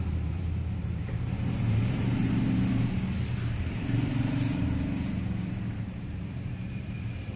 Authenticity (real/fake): fake